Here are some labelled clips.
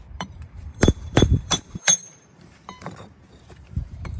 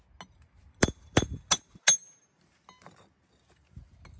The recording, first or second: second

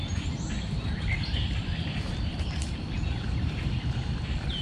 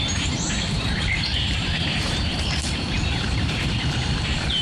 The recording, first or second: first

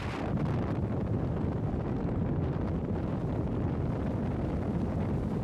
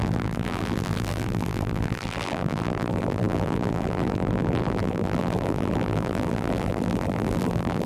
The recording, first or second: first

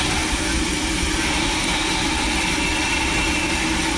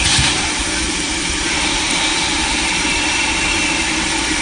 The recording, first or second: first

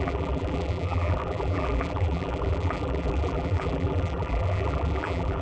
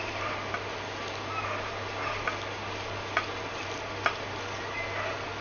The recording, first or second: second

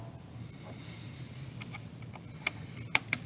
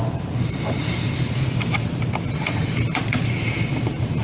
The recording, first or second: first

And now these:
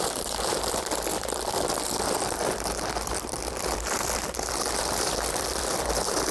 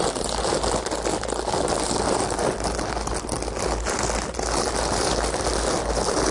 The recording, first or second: second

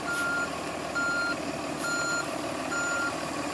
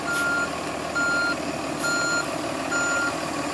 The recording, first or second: second